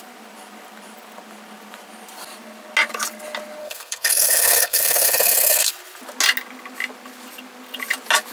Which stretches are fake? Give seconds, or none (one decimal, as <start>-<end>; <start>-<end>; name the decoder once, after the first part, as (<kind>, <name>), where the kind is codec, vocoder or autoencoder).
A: 3.6-5.7 (codec, SNAC)